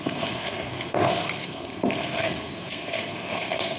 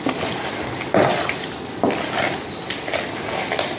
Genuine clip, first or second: second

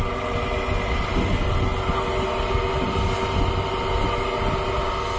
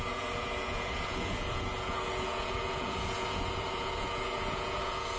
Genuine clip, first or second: first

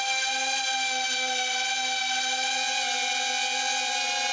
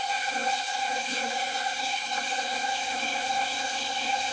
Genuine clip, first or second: first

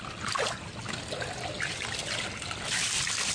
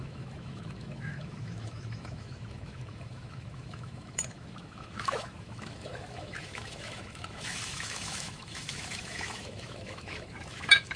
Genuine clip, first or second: first